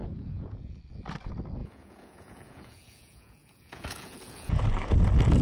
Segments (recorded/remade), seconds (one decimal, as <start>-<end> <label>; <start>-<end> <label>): 0.0-0.8 remade; 0.8-1.6 recorded; 1.6-4.6 remade; 4.6-5.4 recorded